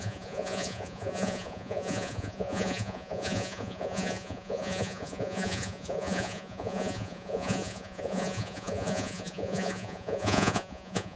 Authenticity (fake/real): fake